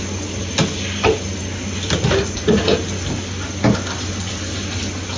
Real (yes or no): yes